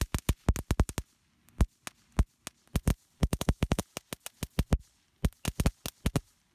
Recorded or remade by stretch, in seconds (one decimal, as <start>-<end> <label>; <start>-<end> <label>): 0.0-3.2 recorded; 3.2-3.8 remade; 3.8-6.5 recorded